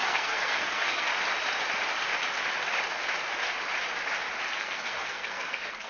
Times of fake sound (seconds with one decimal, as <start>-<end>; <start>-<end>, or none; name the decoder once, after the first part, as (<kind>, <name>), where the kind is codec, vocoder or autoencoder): 0.0-1.1 (codec, SNAC); 4.6-5.9